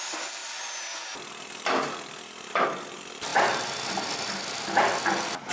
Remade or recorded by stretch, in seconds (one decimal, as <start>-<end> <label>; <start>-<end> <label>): 0.0-5.5 recorded